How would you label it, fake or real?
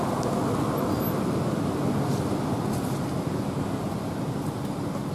real